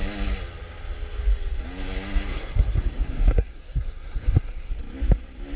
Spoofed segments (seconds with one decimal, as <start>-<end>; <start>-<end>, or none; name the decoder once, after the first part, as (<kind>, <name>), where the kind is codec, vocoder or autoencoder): 2.3-4.8 (codec, SNAC)

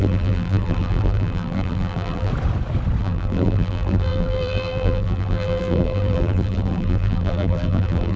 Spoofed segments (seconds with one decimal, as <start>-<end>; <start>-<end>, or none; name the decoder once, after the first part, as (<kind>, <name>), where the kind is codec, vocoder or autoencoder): 0.0-2.3 (vocoder, BigVGAN v2); 3.0-8.2

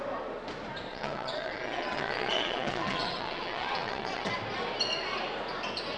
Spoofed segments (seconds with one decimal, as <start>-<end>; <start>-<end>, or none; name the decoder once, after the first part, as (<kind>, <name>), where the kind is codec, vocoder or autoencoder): 0.9-4.3 (vocoder, WaveNeXt)

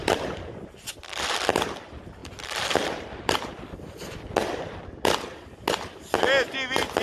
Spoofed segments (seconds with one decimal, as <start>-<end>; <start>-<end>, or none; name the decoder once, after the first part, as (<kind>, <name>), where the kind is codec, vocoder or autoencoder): 2.2-3.5 (vocoder, BigVGAN v2)

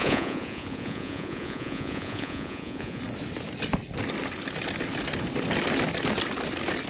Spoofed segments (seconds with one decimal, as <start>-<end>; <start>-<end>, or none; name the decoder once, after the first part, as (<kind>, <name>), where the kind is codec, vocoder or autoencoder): 0.0-3.0 (vocoder, Vocos)